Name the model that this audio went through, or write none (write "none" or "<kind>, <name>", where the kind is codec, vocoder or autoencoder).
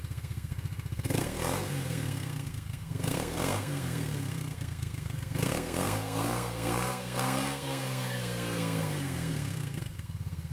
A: codec, SNAC